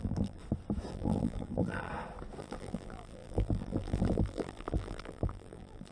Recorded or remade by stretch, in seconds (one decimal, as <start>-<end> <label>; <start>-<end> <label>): 0.0-0.4 remade; 0.4-0.9 recorded; 0.9-1.9 remade; 1.9-2.4 recorded; 2.4-5.9 remade